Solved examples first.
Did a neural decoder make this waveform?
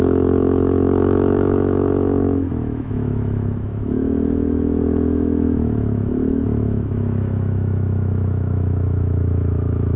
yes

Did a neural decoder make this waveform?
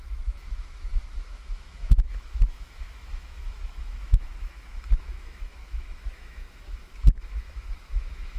yes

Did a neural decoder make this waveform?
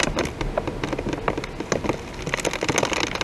no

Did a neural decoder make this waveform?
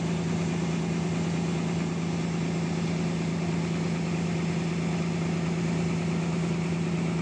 no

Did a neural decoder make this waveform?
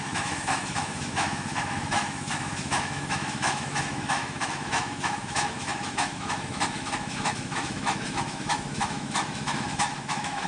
yes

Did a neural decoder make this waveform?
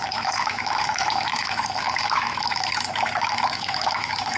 yes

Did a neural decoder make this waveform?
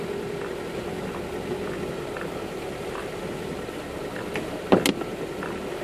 no